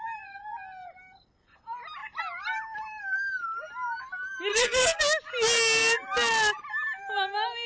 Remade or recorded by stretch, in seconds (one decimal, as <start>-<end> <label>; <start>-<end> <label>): 0.0-4.5 recorded; 4.5-5.0 remade; 5.0-7.7 recorded